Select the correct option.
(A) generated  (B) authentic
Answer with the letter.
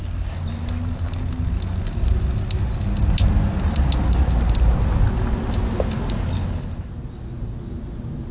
B